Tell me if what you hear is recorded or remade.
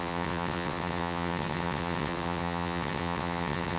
remade